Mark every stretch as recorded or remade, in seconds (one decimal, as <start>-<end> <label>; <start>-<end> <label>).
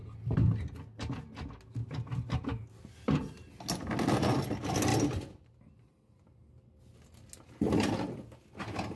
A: 0.0-9.0 recorded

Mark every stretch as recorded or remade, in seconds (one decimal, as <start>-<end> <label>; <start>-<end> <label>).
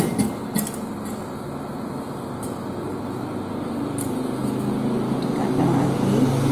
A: 0.0-6.5 recorded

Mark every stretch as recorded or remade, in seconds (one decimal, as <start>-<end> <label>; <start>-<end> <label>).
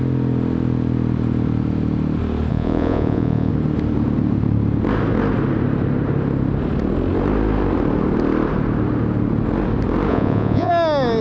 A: 0.0-2.5 recorded; 2.5-3.5 remade; 3.5-10.1 recorded; 10.1-10.7 remade; 10.7-11.2 recorded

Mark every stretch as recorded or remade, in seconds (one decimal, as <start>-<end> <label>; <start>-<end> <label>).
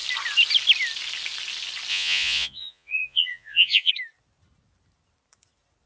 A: 0.0-1.9 recorded; 1.9-3.9 remade; 3.9-5.9 recorded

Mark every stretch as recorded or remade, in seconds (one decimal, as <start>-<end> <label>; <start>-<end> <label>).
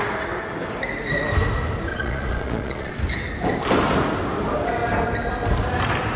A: 0.0-1.9 recorded; 1.9-2.9 remade; 2.9-6.2 recorded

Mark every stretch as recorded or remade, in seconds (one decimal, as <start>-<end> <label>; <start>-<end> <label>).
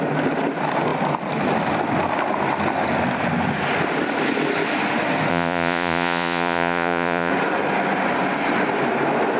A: 0.0-5.3 recorded; 5.3-7.3 remade; 7.3-9.4 recorded